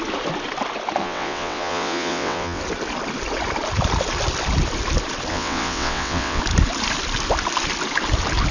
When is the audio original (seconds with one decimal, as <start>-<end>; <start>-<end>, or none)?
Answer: 0.0-1.0; 2.6-5.3; 6.4-8.5